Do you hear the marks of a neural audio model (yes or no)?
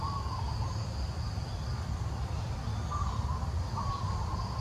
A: yes